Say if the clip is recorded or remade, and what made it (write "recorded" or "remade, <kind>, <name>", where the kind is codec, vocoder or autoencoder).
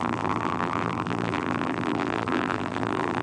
remade, vocoder, BigVGAN v2